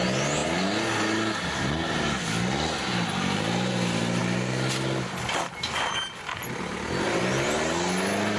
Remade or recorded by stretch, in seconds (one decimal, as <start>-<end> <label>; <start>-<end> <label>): 0.0-8.4 recorded